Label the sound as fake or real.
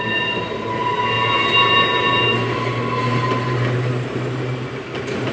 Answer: real